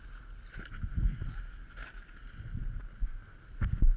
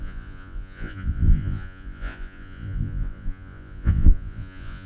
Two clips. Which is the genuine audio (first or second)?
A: first